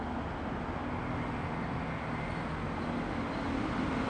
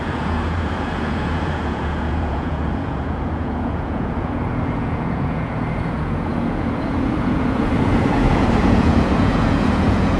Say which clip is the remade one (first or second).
second